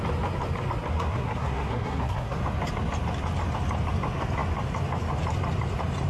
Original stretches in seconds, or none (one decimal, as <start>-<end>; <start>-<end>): 0.0-0.9; 2.4-6.1